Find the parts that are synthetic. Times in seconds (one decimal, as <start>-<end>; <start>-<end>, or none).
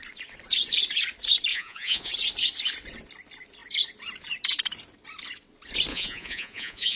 1.5-2.1; 5.9-7.0